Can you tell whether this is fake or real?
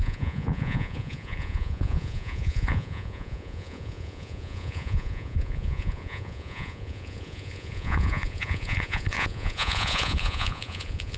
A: fake